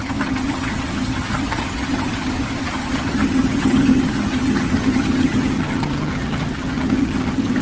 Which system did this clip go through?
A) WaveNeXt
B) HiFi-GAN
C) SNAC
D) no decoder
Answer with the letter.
B